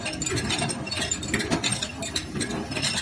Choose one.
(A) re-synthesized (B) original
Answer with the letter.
B